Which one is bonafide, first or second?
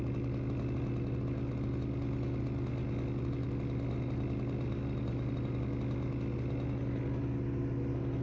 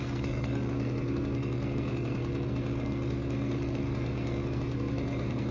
first